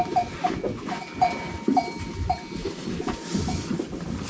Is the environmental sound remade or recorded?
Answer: recorded